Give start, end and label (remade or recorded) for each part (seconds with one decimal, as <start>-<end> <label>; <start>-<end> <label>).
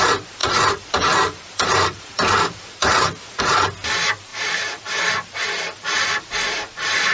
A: 0.0-0.4 recorded; 0.4-3.4 remade; 3.4-4.3 recorded; 4.3-4.8 remade; 4.8-7.1 recorded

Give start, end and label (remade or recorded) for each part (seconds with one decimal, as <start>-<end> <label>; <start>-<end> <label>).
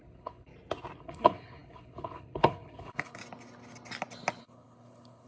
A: 0.0-0.5 remade; 0.5-1.0 recorded; 1.0-3.2 remade; 3.2-4.4 recorded; 4.4-5.3 remade